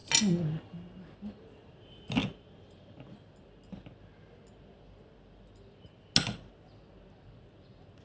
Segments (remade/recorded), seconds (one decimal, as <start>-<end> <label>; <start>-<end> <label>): 0.0-2.2 recorded; 2.2-3.1 remade; 3.1-8.0 recorded